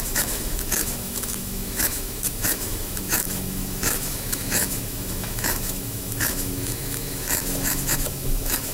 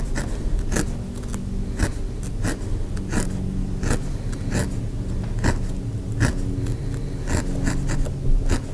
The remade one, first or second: first